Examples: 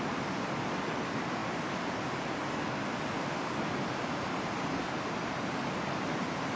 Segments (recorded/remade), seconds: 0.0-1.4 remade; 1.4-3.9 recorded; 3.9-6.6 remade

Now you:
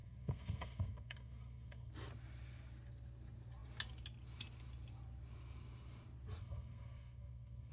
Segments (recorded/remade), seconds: 0.0-1.9 remade; 1.9-6.4 recorded; 6.4-7.7 remade

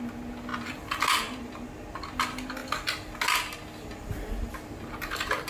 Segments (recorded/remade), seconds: 0.0-5.5 recorded

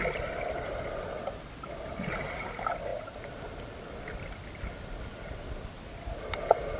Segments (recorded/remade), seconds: 0.0-6.8 recorded

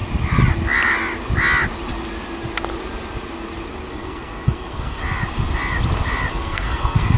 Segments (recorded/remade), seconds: 0.0-3.9 recorded; 3.9-5.0 remade; 5.0-6.3 recorded; 6.3-7.2 remade

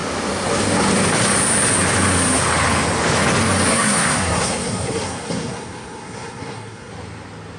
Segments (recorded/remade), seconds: 0.0-3.7 recorded; 3.7-6.9 remade; 6.9-7.6 recorded

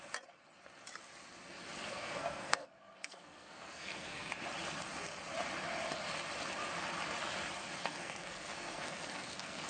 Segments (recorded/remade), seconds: 0.0-1.9 recorded; 1.9-4.3 remade; 4.3-7.8 recorded; 7.8-9.7 remade